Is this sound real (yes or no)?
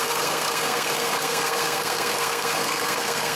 no